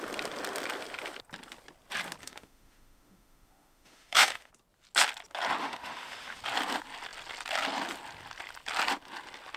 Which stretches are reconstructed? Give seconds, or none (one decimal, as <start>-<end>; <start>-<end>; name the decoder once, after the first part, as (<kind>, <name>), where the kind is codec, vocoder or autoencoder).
2.2-4.5 (autoencoder, DAC-VAE); 5.6-6.4